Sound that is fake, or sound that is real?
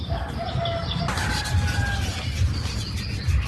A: real